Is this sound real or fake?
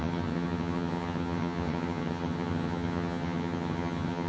fake